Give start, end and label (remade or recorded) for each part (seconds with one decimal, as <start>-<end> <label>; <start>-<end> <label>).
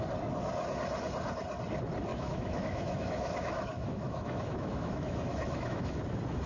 0.0-2.1 recorded; 2.1-6.0 remade; 6.0-6.5 recorded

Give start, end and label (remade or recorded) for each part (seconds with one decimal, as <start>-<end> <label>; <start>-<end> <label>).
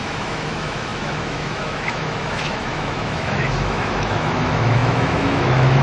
0.0-5.8 remade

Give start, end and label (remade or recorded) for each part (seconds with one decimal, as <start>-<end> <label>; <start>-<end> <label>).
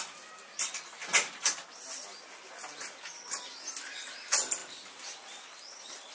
0.0-6.1 recorded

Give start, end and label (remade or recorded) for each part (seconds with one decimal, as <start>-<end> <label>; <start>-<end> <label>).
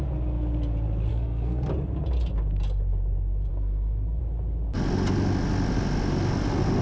0.0-1.1 recorded; 1.1-1.7 remade; 1.7-3.5 recorded; 3.5-4.2 remade; 4.2-6.8 recorded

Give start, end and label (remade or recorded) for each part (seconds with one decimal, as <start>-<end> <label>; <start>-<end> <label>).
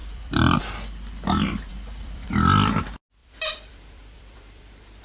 0.0-0.6 remade; 0.6-1.7 recorded; 1.7-2.7 remade; 2.7-3.2 recorded; 3.2-5.0 remade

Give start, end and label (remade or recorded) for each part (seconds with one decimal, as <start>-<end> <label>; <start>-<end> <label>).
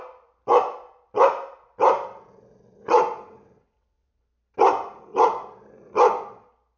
0.0-2.8 recorded; 2.8-4.1 remade; 4.1-6.8 recorded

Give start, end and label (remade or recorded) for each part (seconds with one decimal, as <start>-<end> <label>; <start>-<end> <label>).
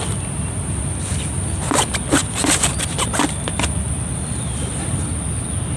0.0-5.8 recorded